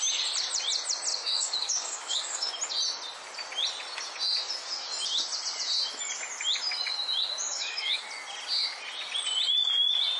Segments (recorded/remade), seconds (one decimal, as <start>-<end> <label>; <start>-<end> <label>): 0.0-1.1 recorded; 1.1-2.5 remade; 2.5-7.4 recorded; 7.4-8.0 remade; 8.0-10.2 recorded